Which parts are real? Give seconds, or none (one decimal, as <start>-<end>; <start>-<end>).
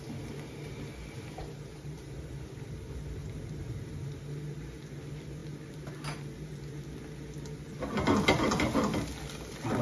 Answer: 0.0-1.4; 2.4-3.2; 4.9-9.8